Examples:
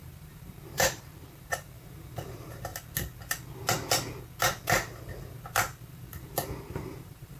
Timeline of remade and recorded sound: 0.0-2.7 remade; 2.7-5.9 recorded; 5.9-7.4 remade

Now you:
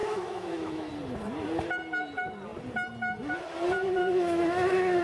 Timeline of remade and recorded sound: 0.0-0.9 remade; 0.9-4.0 recorded; 4.0-5.0 remade

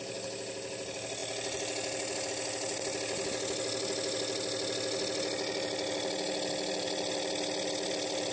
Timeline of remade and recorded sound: 0.0-8.3 recorded